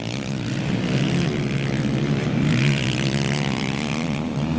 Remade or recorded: remade